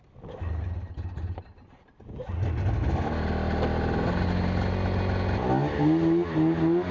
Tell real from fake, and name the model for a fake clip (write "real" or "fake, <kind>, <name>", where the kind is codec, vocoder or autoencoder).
real